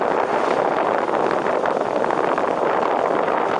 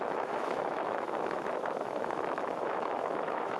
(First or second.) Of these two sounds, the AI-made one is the second